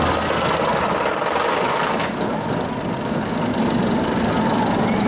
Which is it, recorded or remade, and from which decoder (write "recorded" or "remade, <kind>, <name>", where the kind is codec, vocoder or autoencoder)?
recorded